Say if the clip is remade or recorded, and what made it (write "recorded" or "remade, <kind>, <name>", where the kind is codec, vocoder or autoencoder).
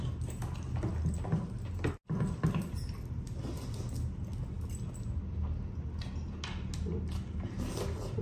recorded